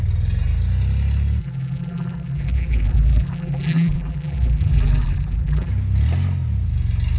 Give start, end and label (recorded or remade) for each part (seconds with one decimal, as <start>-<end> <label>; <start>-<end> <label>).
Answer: 0.0-1.4 recorded; 1.4-5.7 remade; 5.7-7.2 recorded